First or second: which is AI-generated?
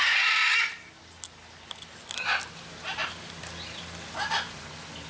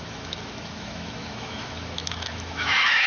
second